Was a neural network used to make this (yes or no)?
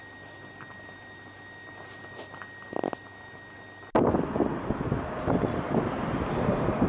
no